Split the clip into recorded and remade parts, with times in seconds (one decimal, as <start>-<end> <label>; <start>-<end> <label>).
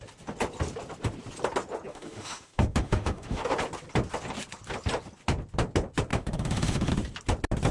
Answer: 0.0-1.9 recorded; 1.9-3.4 remade; 3.4-6.1 recorded; 6.1-6.9 remade; 6.9-7.7 recorded